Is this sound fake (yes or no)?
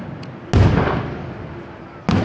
no